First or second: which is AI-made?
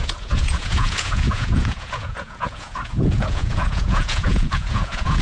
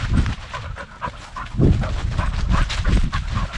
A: first